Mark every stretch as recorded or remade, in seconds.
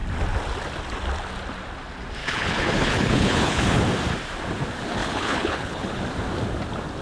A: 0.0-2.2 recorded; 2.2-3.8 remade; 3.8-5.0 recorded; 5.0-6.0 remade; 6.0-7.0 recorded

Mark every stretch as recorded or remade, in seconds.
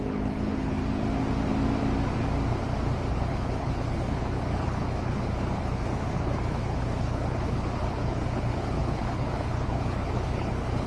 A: 0.0-0.8 remade; 0.8-3.1 recorded; 3.1-10.9 remade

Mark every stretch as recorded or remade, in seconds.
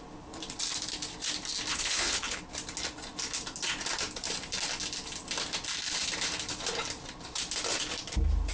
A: 0.0-1.7 recorded; 1.7-2.4 remade; 2.4-8.5 recorded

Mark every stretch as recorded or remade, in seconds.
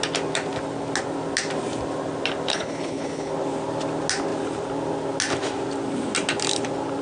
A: 0.0-2.5 recorded; 2.5-3.3 remade; 3.3-7.0 recorded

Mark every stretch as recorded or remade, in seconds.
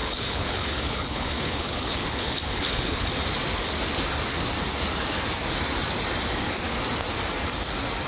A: 0.0-3.1 remade; 3.1-8.1 recorded